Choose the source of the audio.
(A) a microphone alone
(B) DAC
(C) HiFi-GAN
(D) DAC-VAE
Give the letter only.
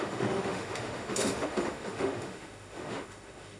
D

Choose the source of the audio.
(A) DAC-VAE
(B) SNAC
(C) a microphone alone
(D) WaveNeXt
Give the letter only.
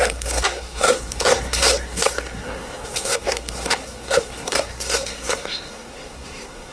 B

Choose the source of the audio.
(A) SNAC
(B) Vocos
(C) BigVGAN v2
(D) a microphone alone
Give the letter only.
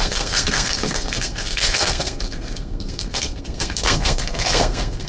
A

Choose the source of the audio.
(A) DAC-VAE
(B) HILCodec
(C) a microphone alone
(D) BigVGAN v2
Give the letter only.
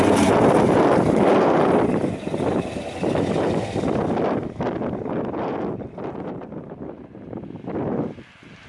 C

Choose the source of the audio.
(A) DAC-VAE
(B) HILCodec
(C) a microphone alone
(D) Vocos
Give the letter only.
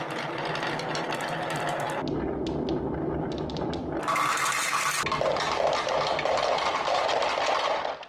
C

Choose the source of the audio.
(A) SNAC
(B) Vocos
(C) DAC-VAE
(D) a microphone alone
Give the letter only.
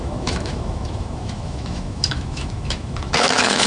C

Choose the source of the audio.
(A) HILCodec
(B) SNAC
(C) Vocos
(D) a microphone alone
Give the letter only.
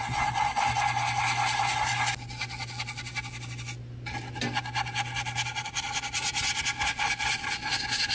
D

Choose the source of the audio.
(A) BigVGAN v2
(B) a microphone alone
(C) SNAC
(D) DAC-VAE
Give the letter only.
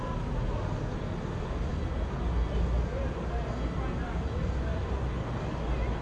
B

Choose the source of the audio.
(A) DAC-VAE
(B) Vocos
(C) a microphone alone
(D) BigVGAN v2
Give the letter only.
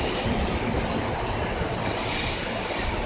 C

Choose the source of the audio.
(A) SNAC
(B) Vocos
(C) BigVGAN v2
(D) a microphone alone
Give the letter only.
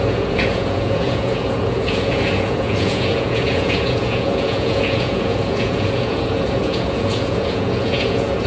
B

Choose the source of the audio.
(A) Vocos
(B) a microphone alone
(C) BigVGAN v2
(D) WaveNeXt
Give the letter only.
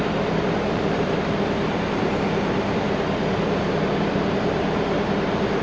C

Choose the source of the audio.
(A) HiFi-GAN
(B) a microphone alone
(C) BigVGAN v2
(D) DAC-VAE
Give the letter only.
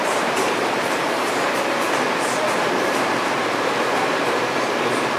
C